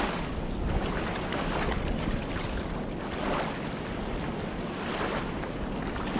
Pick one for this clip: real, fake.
real